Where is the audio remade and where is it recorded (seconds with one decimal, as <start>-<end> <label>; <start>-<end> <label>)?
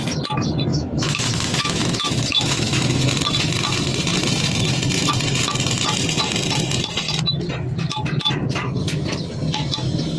0.0-0.7 recorded; 0.7-3.0 remade; 3.0-10.2 recorded